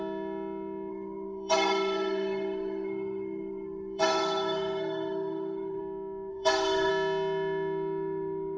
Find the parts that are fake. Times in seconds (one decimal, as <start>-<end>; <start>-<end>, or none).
0.9-5.8; 6.3-6.9